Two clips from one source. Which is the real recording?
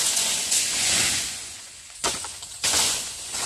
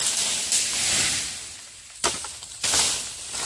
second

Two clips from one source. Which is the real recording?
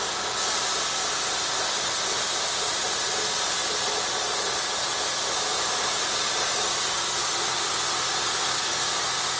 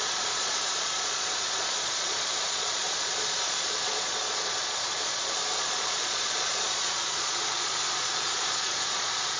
first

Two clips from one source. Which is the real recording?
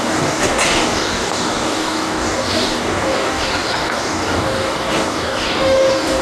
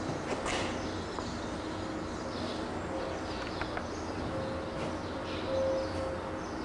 second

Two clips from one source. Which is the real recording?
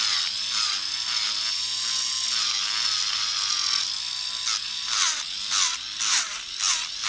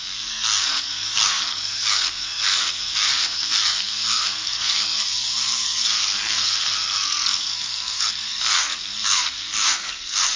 first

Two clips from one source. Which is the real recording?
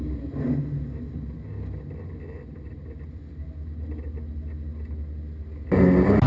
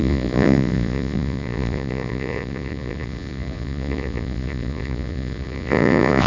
first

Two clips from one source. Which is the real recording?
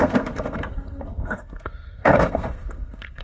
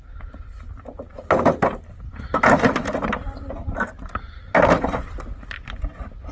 second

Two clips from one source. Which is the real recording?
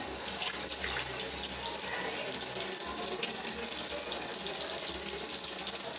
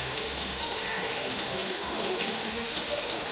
first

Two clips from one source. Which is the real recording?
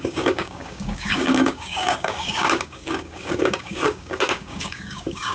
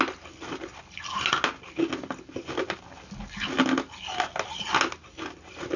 second